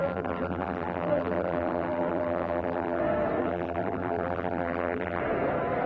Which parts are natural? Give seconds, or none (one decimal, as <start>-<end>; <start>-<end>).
3.0-3.4; 5.2-5.9